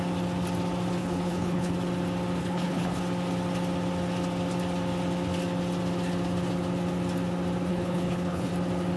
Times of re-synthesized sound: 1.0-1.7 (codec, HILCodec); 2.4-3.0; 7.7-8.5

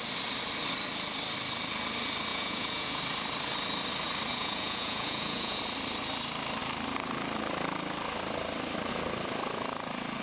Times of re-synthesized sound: 2.3-3.0 (vocoder, Vocos); 4.3-5.6

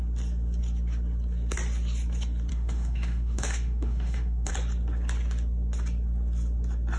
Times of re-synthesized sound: 2.5-4.5 (autoencoder, DAC-VAE)

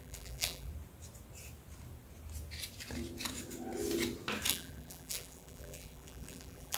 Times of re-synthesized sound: 0.0-0.7 (vocoder, BigVGAN v2); 4.5-6.8

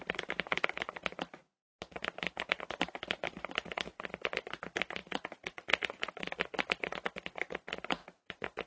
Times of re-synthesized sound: 5.0-6.3 (vocoder, Vocos); 8.0-8.7

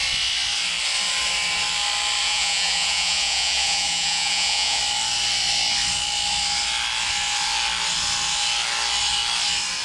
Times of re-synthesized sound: 2.2-4.8 (vocoder, Vocos)